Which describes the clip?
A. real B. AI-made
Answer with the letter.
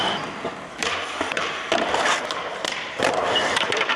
B